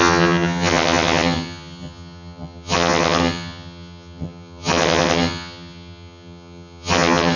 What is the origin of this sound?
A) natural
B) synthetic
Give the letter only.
B